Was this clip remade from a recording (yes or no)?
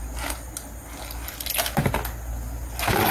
no